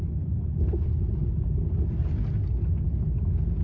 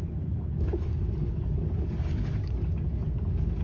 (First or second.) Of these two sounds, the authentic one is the first